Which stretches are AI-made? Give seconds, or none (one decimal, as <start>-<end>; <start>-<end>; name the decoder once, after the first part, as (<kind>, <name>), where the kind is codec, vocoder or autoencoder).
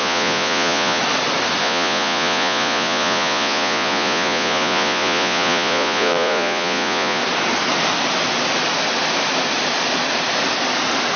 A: 0.0-1.0 (vocoder, Vocos); 1.6-7.2